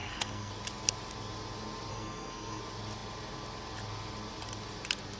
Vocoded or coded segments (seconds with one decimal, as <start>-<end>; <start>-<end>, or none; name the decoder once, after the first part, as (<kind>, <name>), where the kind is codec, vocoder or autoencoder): 0.0-0.5 (codec, SNAC); 1.9-2.6